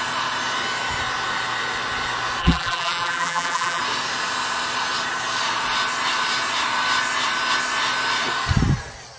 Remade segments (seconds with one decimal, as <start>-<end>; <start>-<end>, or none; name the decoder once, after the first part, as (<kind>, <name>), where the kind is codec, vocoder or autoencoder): 2.4-3.8 (vocoder, BigVGAN v2)